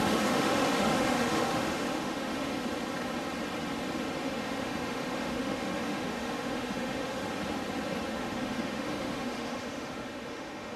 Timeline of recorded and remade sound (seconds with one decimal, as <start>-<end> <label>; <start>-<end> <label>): 0.0-2.5 remade; 2.5-4.3 recorded; 4.3-7.2 remade; 7.2-8.1 recorded; 8.1-10.8 remade